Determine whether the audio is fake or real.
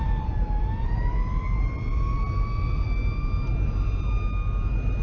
real